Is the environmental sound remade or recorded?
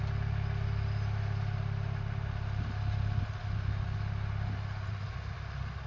recorded